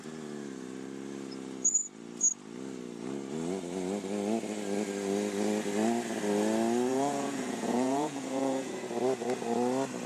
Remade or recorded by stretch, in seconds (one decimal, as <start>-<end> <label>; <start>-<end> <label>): 0.0-6.9 recorded; 6.9-8.7 remade; 8.7-10.1 recorded